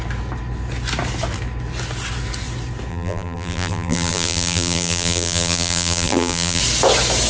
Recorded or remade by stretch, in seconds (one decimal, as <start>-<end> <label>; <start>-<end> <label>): 0.0-2.9 recorded; 2.9-6.6 remade; 6.6-7.3 recorded